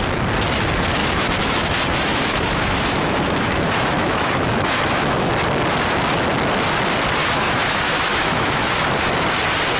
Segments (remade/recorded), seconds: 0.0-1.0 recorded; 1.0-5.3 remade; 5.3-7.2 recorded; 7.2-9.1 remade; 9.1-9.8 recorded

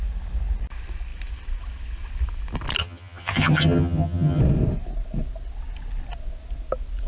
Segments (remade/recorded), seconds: 0.0-2.8 recorded; 2.8-4.4 remade; 4.4-7.1 recorded

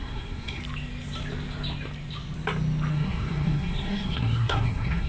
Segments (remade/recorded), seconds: 0.0-0.6 remade; 0.6-2.9 recorded; 2.9-5.1 remade

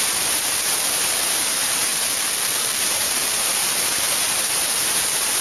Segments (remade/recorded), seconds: 0.0-1.9 remade; 1.9-2.8 recorded; 2.8-5.4 remade

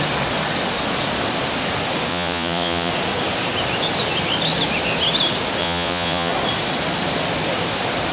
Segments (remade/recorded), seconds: 0.0-2.1 recorded; 2.1-2.9 remade; 2.9-5.6 recorded; 5.6-6.3 remade; 6.3-8.1 recorded